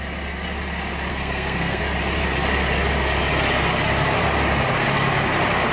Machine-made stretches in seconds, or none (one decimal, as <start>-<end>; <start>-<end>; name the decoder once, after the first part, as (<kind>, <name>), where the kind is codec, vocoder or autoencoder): 1.1-1.8 (codec, SNAC)